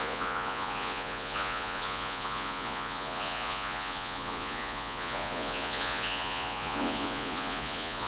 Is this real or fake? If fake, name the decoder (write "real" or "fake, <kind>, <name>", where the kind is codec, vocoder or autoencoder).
fake, vocoder, Vocos